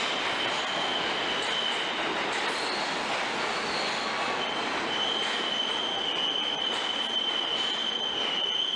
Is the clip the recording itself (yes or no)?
yes